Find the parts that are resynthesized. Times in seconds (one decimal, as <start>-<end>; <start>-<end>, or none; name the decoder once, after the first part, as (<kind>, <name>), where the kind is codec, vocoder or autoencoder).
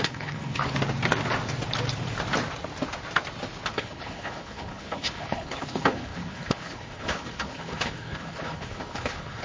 0.0-0.6 (codec, HILCodec); 3.7-9.4